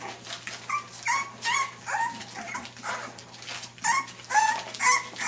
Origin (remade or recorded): recorded